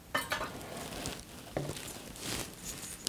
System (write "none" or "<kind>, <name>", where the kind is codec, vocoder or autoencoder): none